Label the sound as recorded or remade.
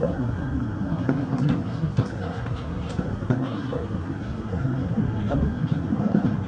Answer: remade